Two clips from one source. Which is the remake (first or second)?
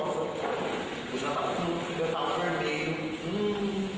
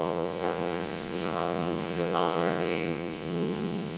second